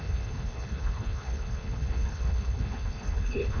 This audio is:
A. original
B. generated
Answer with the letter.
B